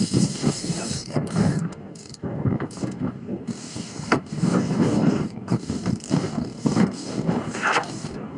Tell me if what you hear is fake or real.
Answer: fake